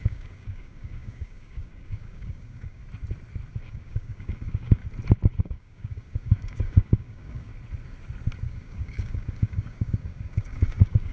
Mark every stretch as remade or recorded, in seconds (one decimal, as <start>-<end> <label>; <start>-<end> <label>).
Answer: 0.0-2.8 remade; 2.8-3.7 recorded; 3.7-4.8 remade; 4.8-5.4 recorded; 5.4-7.5 remade; 7.5-8.5 recorded; 8.5-11.1 remade